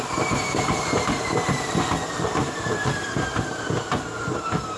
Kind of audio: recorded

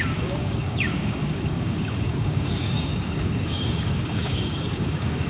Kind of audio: remade